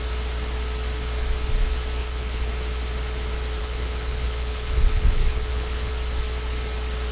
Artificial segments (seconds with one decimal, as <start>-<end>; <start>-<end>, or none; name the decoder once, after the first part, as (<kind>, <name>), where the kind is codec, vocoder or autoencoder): 2.0-2.5 (codec, HILCodec); 3.6-5.9